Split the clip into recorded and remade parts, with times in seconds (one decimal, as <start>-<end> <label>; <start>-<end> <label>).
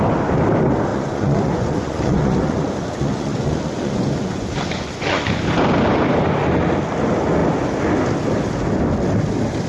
0.0-0.9 recorded; 0.9-5.4 remade; 5.4-9.7 recorded